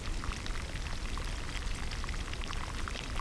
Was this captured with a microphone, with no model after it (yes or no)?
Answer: yes